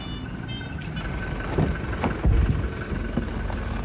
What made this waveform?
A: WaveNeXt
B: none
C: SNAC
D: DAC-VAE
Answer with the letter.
B